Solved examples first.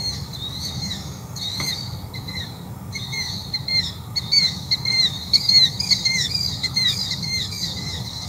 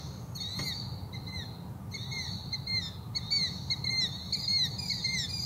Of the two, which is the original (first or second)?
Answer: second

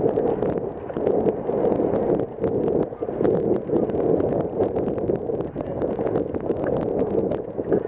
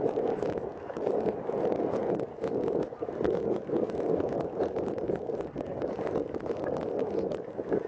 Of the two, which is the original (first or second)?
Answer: first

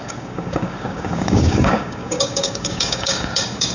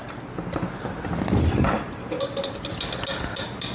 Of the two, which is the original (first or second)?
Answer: second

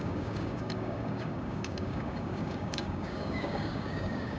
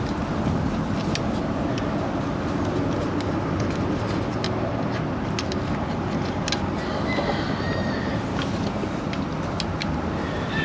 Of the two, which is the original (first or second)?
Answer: second